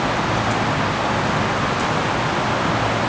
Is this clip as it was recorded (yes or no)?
yes